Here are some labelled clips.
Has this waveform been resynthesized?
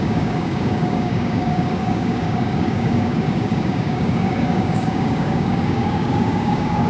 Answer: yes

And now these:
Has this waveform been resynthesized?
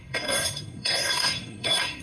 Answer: yes